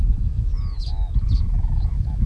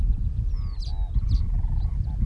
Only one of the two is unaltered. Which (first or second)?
second